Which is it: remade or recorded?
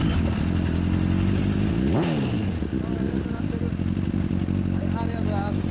recorded